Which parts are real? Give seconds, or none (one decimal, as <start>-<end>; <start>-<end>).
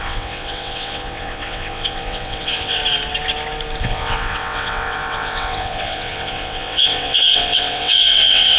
2.8-3.8